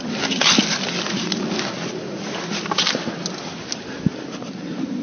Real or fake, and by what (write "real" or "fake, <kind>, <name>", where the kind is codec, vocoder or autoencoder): real